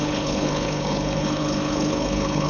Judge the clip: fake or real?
fake